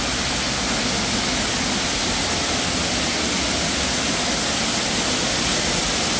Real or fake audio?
real